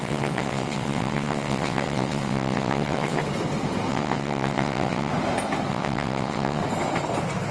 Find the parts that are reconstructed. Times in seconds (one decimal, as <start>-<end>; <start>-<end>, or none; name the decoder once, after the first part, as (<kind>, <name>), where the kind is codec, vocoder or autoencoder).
0.0-3.2 (vocoder, WaveNeXt); 3.9-5.1; 5.7-6.6